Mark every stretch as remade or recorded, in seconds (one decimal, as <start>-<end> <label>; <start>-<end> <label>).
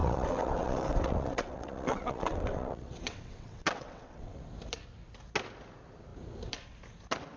0.0-4.4 remade; 4.4-7.4 recorded